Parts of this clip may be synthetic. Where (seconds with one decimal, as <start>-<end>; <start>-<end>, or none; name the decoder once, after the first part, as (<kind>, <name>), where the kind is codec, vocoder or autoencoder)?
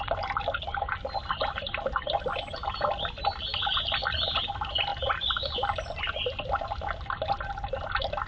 none